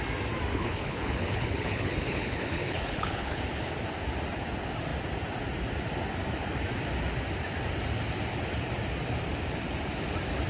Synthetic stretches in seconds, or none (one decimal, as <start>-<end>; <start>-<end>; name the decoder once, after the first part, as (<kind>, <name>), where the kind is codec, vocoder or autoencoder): 0.5-3.4 (codec, HILCodec)